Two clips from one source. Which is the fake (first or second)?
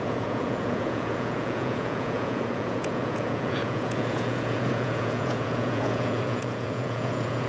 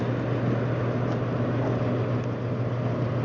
first